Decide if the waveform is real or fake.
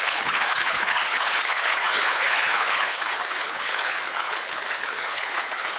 fake